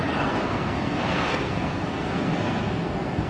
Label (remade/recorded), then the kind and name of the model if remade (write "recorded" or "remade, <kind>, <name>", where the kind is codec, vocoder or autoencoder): remade, codec, SNAC